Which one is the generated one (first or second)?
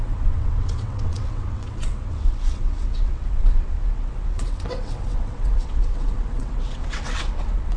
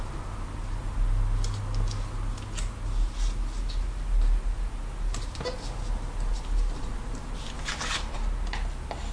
first